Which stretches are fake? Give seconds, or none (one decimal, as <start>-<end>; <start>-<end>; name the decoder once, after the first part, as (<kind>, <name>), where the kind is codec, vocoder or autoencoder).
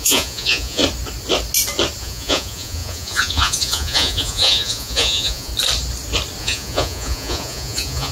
0.0-0.8 (vocoder, Vocos); 2.0-5.5; 6.4-8.1